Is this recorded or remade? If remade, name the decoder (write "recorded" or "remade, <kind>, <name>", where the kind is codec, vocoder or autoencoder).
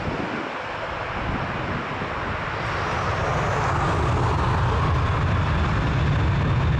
recorded